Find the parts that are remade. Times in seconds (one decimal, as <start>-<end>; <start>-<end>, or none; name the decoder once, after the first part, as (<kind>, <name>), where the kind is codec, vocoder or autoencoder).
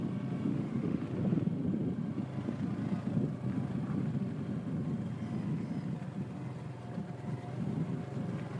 0.5-1.0 (autoencoder, DAC-VAE)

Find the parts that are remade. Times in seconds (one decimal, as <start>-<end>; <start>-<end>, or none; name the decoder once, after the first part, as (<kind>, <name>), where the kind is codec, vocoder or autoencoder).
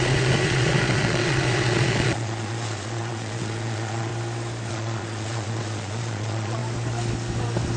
0.0-4.1 (vocoder, Vocos); 4.7-6.6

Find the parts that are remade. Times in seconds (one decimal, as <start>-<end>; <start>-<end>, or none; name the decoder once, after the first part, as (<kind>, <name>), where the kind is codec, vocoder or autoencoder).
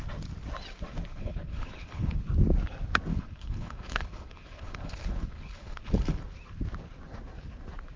1.1-2.2 (codec, HILCodec); 3.1-6.2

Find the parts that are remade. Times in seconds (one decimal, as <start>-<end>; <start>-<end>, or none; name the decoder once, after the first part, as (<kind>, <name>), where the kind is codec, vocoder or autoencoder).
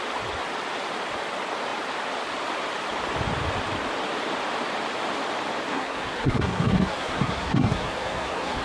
5.7-8.6 (codec, SNAC)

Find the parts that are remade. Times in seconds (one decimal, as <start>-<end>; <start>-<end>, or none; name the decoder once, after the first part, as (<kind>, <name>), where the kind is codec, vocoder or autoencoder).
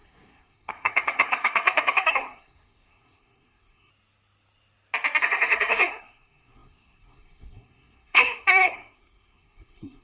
0.0-3.9 (codec, SNAC); 5.2-10.0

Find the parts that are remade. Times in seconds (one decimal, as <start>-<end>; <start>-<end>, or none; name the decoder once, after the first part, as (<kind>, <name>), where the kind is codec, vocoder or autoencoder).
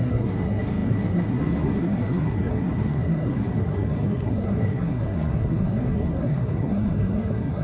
0.0-7.6 (codec, SNAC)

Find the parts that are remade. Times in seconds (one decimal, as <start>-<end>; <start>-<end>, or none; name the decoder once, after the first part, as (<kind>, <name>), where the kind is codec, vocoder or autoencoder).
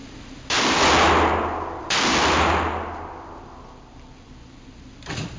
0.0-0.8 (vocoder, BigVGAN v2); 1.8-5.0